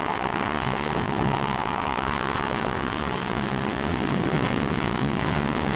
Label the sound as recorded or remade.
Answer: remade